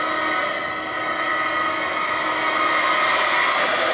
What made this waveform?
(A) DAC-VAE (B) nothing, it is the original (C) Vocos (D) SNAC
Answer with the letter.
B